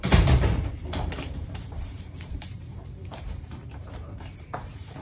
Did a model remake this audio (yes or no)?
yes